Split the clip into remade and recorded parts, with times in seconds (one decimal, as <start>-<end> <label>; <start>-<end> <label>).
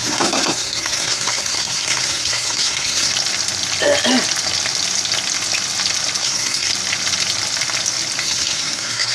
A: 0.0-3.1 remade; 3.1-6.2 recorded; 6.2-6.7 remade; 6.7-8.2 recorded; 8.2-9.1 remade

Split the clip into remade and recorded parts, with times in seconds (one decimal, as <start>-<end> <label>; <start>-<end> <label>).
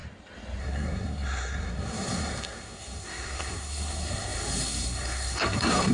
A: 0.0-0.6 recorded; 0.6-5.9 remade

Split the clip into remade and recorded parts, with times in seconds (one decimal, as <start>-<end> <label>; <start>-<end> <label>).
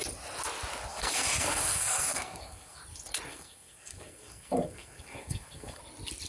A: 0.0-0.9 recorded; 0.9-2.8 remade; 2.8-3.3 recorded; 3.3-5.8 remade; 5.8-6.3 recorded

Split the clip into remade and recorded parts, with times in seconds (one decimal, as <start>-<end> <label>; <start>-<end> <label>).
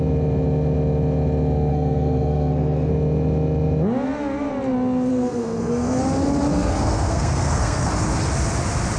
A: 0.0-1.7 recorded; 1.7-2.9 remade; 2.9-5.1 recorded; 5.1-6.0 remade; 6.0-6.5 recorded; 6.5-7.9 remade; 7.9-9.0 recorded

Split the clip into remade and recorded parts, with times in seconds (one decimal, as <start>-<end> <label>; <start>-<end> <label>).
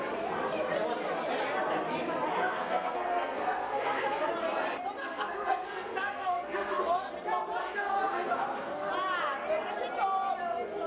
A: 0.0-2.4 recorded; 2.4-4.3 remade; 4.3-5.0 recorded; 5.0-7.1 remade; 7.1-7.6 recorded; 7.6-8.9 remade; 8.9-10.9 recorded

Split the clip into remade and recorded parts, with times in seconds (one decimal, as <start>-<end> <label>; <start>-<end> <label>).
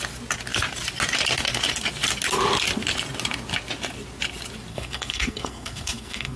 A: 0.0-4.7 recorded; 4.7-6.4 remade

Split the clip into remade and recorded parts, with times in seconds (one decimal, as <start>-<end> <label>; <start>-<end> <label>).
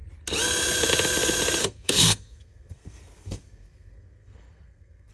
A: 0.0-1.6 recorded; 1.6-5.1 remade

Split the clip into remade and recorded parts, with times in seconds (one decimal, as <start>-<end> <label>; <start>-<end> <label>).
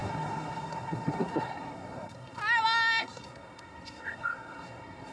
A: 0.0-2.4 remade; 2.4-3.0 recorded; 3.0-5.1 remade